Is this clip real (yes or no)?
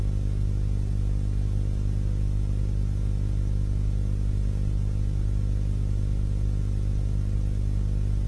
yes